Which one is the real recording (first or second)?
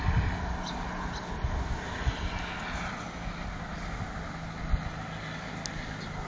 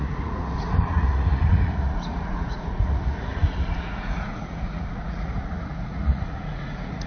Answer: first